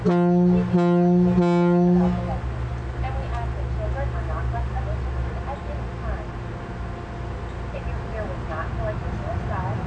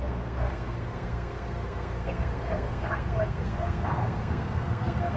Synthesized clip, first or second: second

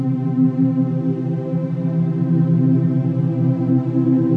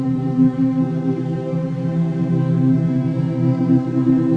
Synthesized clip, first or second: second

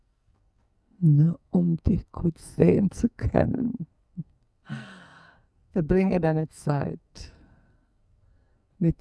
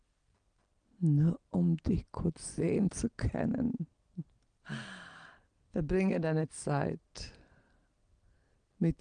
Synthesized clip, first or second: first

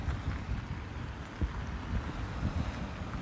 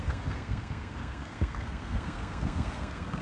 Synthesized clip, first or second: second